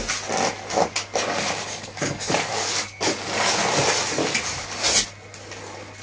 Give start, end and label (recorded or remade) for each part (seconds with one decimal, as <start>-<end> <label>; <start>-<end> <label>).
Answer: 0.0-1.1 recorded; 1.1-3.6 remade; 3.6-4.2 recorded; 4.2-4.8 remade; 4.8-6.0 recorded